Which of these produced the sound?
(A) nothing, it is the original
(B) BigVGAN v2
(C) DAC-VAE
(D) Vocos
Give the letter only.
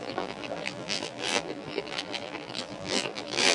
B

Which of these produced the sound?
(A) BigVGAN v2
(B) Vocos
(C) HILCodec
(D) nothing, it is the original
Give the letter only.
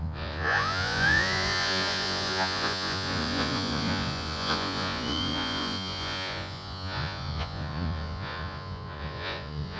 B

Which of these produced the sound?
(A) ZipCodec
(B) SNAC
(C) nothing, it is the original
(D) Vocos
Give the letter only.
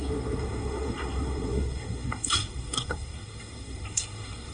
B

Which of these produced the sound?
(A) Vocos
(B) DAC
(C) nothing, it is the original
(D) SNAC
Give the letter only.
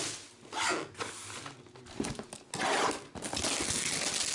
C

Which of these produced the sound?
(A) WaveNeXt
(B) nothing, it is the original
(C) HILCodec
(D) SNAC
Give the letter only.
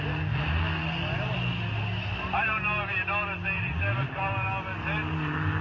B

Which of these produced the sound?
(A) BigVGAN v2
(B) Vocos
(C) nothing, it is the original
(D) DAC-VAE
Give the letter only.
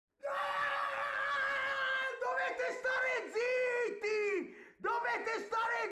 C